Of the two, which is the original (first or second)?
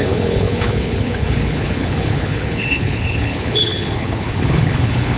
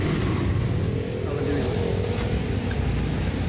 second